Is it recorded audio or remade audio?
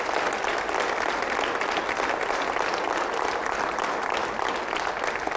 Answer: recorded